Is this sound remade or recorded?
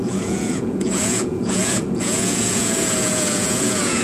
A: remade